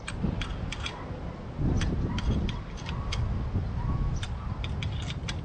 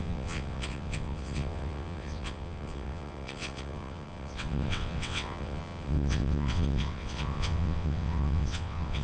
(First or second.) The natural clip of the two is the first